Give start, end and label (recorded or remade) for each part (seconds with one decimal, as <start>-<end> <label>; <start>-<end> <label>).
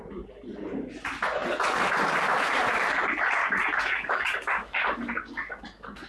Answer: 0.0-3.4 recorded; 3.4-6.1 remade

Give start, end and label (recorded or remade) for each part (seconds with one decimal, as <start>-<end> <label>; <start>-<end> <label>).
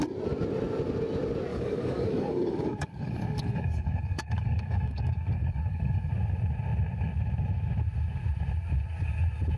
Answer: 0.0-1.5 recorded; 1.5-6.1 remade; 6.1-9.6 recorded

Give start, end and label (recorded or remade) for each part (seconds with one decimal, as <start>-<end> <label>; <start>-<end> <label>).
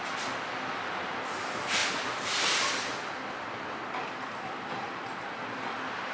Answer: 0.0-6.1 recorded